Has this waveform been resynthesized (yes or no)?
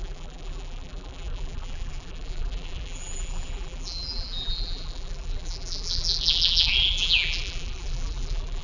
yes